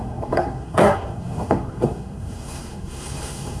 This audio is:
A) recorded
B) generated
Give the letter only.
B